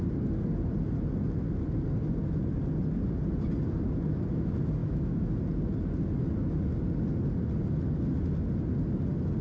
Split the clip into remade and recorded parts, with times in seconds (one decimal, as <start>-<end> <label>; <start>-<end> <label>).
0.0-4.8 recorded; 4.8-5.3 remade; 5.3-9.4 recorded